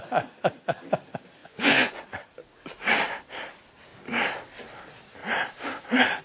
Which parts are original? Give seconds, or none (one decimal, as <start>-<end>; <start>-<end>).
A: 0.0-1.4; 2.0-6.2